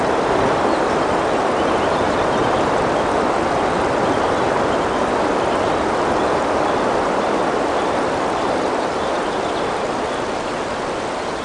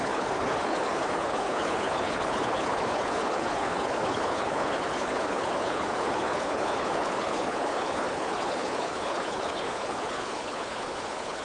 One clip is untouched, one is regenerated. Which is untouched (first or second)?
first